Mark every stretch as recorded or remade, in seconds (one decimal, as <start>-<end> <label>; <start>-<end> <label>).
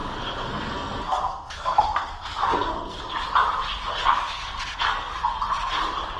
0.0-3.0 remade; 3.0-4.0 recorded; 4.0-5.1 remade; 5.1-6.2 recorded